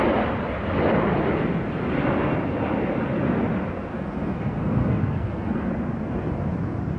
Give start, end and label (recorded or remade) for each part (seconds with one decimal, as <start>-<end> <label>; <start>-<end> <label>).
0.0-3.9 recorded; 3.9-5.6 remade; 5.6-7.0 recorded